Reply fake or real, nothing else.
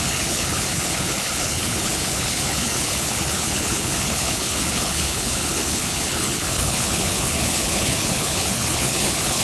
fake